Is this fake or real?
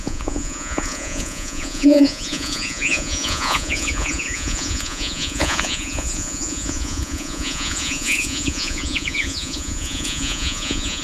fake